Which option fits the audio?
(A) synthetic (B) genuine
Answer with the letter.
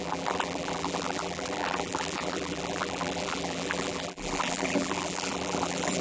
A